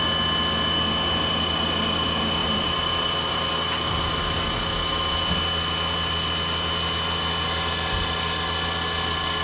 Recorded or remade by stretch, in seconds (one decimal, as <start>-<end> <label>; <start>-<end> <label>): 0.0-2.4 recorded; 2.4-3.5 remade; 3.5-9.4 recorded